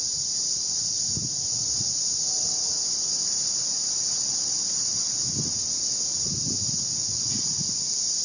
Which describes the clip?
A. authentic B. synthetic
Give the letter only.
A